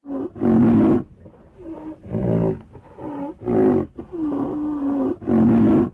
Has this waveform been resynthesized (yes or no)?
no